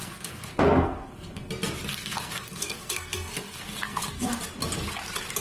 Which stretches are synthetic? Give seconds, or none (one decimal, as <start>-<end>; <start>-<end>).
0.0-1.5; 1.9-4.4